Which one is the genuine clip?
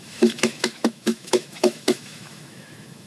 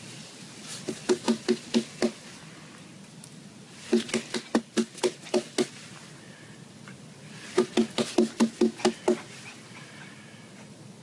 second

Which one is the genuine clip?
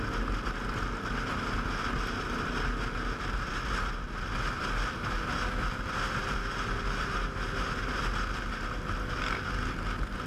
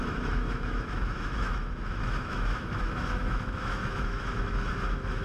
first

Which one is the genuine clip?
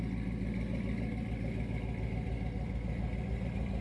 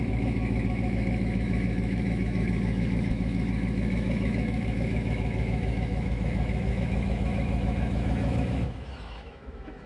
first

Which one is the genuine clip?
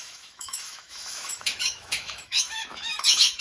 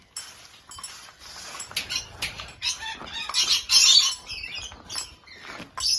second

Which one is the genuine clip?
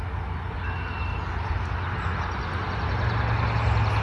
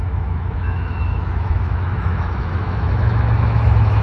first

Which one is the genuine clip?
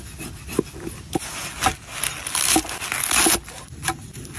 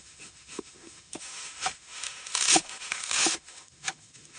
first